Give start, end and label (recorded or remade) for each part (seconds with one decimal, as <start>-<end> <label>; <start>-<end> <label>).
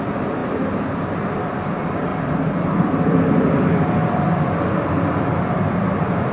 0.0-2.1 recorded; 2.1-3.7 remade; 3.7-6.3 recorded